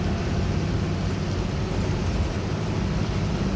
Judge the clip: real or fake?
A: real